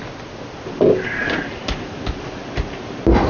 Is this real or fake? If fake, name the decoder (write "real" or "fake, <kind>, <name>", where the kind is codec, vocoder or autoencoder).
fake, vocoder, BigVGAN v2